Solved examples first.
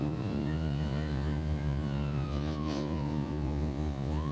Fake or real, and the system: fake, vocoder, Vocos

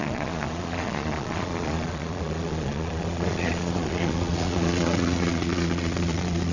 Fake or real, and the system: fake, vocoder, Vocos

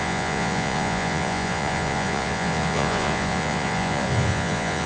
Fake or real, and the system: fake, vocoder, Vocos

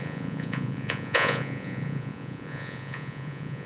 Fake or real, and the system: fake, vocoder, Vocos